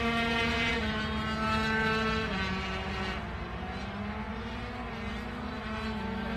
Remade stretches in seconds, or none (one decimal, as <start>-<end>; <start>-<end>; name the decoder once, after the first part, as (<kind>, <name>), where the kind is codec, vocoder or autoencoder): none